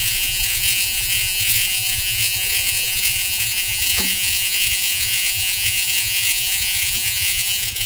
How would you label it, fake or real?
fake